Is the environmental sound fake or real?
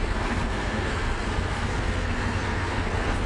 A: fake